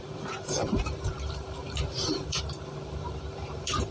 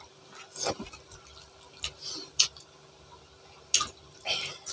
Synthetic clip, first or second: first